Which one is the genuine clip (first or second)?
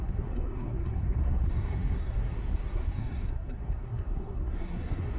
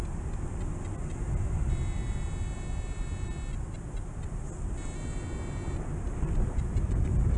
second